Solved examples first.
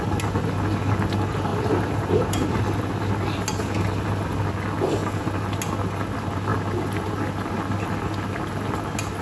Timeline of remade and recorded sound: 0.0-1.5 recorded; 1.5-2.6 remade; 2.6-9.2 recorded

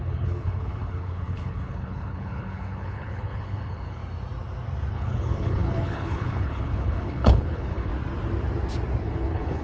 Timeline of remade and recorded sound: 0.0-4.0 remade; 4.0-4.9 recorded; 4.9-7.9 remade; 7.9-9.0 recorded; 9.0-9.6 remade

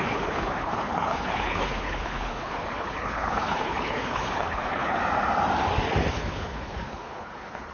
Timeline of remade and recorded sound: 0.0-5.0 remade; 5.0-6.1 recorded; 6.1-7.7 remade